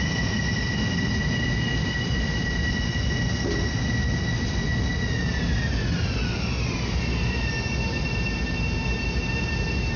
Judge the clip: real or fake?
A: real